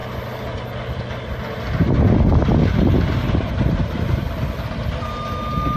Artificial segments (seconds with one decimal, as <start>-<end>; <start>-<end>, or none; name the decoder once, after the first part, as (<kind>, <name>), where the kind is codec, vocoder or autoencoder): none